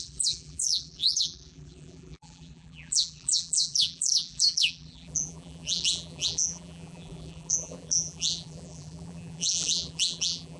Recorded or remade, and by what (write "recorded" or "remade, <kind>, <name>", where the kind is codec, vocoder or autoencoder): remade, vocoder, BigVGAN v2